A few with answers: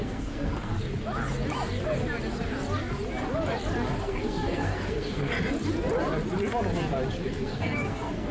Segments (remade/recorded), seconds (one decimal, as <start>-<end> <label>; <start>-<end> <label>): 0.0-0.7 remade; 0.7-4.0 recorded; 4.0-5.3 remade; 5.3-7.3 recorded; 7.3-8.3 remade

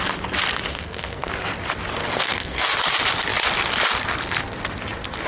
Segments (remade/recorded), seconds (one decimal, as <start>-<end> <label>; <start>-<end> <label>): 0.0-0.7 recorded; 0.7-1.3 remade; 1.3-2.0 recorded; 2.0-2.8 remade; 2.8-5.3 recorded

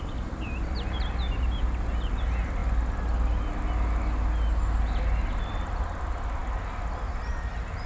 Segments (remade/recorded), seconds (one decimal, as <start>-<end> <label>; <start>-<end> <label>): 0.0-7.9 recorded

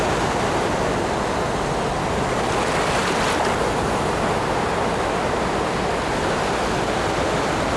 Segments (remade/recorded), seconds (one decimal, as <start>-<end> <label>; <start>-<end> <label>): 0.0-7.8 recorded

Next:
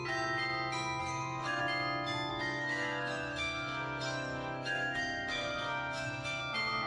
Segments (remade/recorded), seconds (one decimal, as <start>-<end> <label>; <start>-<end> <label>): 0.0-1.0 recorded; 1.0-1.6 remade; 1.6-2.3 recorded; 2.3-6.4 remade; 6.4-6.9 recorded

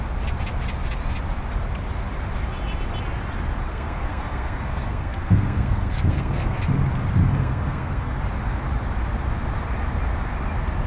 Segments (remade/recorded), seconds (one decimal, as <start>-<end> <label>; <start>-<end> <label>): 0.0-3.7 recorded; 3.7-6.6 remade; 6.6-7.2 recorded; 7.2-8.2 remade; 8.2-10.9 recorded

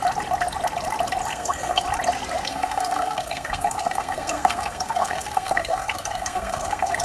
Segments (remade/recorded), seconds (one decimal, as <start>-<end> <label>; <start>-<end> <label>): 0.0-1.3 recorded; 1.3-1.8 remade; 1.8-2.5 recorded; 2.5-7.0 remade